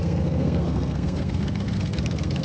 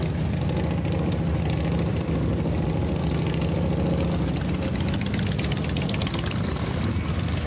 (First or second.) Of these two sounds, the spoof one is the first